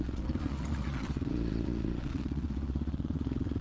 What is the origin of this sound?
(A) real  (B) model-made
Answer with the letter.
B